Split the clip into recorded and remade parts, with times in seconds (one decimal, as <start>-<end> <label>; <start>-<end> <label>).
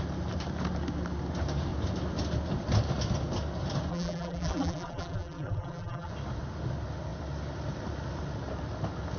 0.0-3.9 recorded; 3.9-6.1 remade; 6.1-9.2 recorded